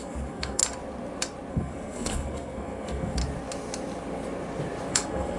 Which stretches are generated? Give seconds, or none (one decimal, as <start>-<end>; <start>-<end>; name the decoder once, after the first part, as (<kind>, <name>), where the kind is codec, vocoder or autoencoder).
0.0-0.6 (codec, SNAC); 1.5-3.2; 4.9-5.4